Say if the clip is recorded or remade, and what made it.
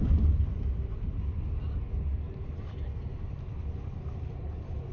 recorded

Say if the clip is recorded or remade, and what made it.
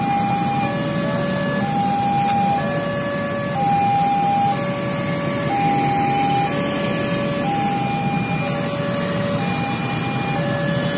recorded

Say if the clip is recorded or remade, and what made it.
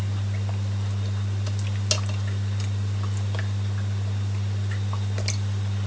recorded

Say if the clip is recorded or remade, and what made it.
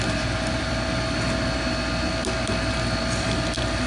recorded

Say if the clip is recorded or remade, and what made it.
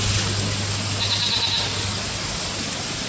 recorded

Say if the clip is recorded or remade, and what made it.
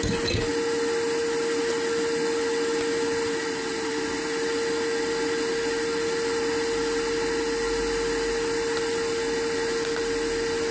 recorded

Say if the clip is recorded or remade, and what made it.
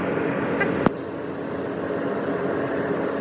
recorded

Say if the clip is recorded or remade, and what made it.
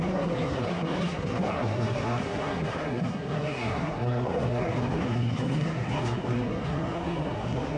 remade, codec, SNAC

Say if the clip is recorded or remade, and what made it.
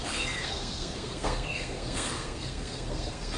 remade, codec, SNAC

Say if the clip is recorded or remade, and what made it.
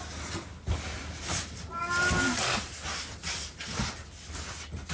recorded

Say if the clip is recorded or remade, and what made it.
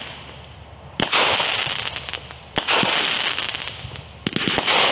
recorded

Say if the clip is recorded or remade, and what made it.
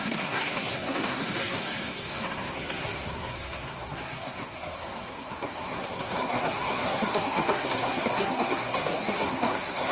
remade, codec, SNAC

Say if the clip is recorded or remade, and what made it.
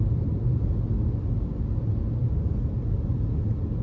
recorded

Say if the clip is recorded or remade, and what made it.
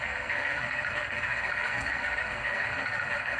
remade, codec, SNAC